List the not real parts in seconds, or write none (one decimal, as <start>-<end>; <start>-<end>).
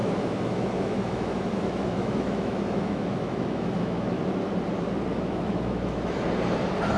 0.0-4.2; 5.1-6.2